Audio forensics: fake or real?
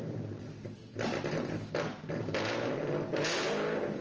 real